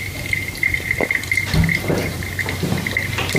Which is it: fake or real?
fake